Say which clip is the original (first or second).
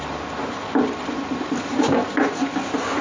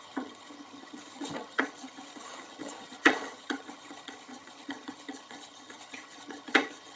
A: first